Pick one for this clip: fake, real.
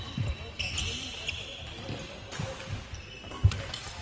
real